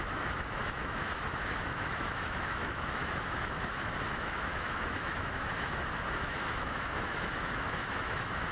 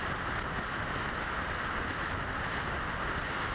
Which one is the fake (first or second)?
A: first